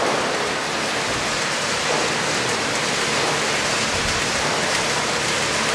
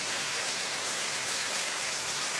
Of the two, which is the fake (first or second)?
second